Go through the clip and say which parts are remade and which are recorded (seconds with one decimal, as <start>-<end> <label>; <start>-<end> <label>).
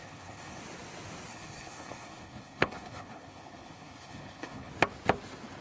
0.0-0.6 remade; 0.6-1.3 recorded; 1.3-4.7 remade; 4.7-5.6 recorded